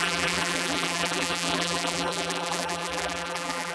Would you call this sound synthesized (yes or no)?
yes